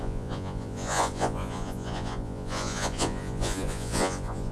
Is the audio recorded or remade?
remade